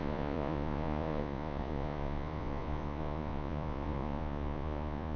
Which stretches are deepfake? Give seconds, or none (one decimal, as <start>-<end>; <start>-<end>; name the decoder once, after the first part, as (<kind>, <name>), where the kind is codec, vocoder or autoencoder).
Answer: 0.0-5.2 (vocoder, Vocos)